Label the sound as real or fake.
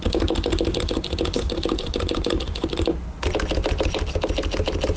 real